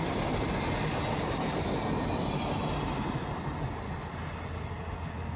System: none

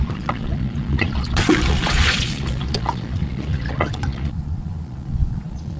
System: vocoder, Vocos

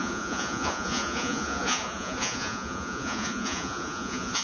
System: vocoder, Vocos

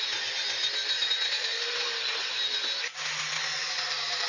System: none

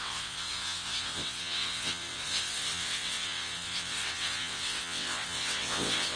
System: vocoder, WaveNeXt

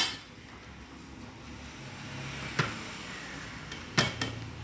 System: none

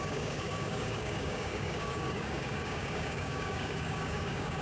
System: codec, DAC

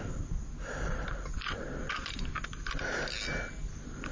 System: none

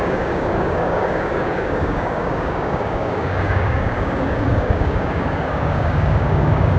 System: codec, DAC